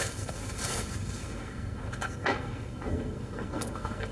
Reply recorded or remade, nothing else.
remade